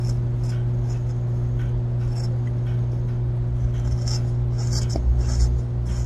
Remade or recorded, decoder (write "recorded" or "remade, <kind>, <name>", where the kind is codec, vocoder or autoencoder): recorded